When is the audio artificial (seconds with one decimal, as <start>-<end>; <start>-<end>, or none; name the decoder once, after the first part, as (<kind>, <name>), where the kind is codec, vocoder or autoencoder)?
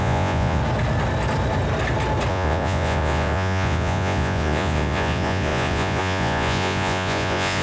0.0-0.6 (vocoder, Vocos); 2.3-7.6